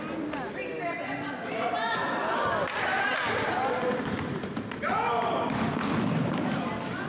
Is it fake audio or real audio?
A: fake